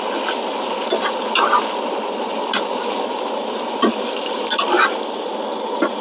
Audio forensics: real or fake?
real